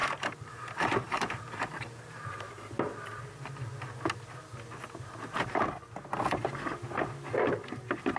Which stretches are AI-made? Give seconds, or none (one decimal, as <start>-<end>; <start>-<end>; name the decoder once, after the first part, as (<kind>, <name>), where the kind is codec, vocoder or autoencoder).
0.0-3.2 (vocoder, BigVGAN v2)